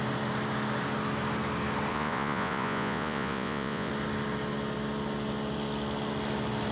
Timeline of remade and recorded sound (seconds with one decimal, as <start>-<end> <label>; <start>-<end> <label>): 0.0-1.9 recorded; 1.9-3.9 remade; 3.9-6.7 recorded